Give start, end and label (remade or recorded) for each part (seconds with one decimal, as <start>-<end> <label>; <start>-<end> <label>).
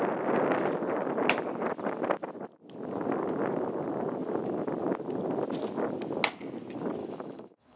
0.0-7.0 recorded; 7.0-7.8 remade